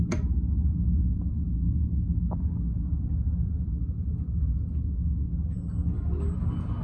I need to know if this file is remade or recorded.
recorded